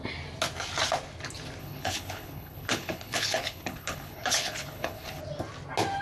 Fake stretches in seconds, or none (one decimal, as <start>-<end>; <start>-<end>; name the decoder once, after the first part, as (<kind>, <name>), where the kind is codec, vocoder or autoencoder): 1.6-5.2 (codec, HILCodec)